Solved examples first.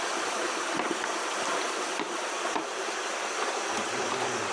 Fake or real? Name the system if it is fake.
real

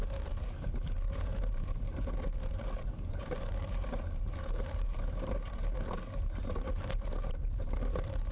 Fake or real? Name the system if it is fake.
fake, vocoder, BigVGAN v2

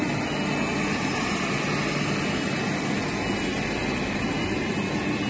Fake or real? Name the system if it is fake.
real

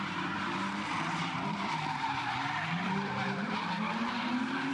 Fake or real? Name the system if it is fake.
fake, vocoder, BigVGAN v2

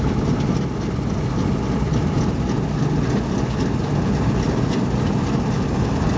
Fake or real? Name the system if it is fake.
real